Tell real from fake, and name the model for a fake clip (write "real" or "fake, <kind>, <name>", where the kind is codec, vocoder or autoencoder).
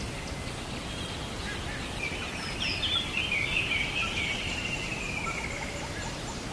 real